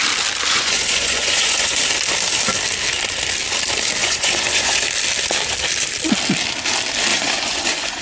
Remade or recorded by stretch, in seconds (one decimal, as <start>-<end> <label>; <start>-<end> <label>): 0.0-0.5 recorded; 0.5-1.8 remade; 1.8-4.0 recorded; 4.0-4.8 remade; 4.8-7.1 recorded; 7.1-8.0 remade